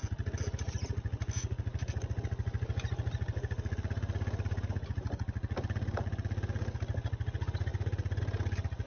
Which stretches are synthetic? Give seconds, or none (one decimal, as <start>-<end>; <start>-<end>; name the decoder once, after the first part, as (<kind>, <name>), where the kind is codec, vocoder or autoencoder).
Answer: none